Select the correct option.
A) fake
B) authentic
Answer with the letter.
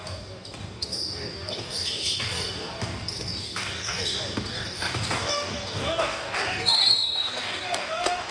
A